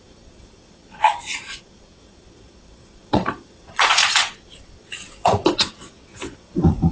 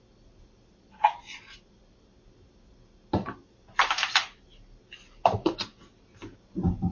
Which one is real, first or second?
second